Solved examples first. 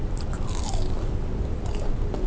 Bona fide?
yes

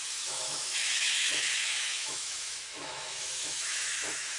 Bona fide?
no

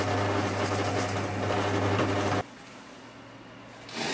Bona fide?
yes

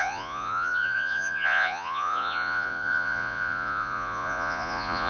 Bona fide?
no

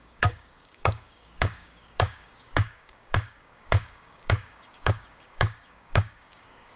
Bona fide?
no